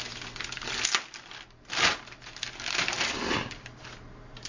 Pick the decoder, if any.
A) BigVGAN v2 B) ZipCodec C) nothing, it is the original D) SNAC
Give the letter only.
C